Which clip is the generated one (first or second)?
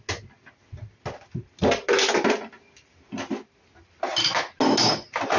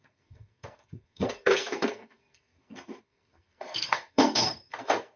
second